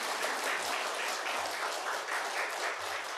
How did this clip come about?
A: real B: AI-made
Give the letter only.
A